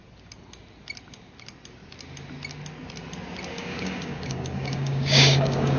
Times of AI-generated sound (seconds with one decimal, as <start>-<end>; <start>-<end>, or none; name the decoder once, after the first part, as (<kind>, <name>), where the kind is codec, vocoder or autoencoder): 3.5-5.8 (codec, DAC)